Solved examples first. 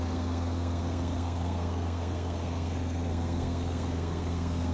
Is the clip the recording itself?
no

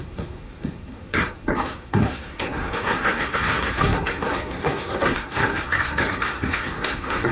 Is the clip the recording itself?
no